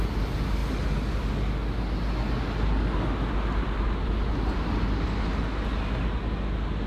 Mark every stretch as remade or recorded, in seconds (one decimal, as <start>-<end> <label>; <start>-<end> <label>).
0.0-6.9 recorded